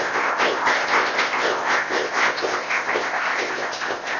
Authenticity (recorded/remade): remade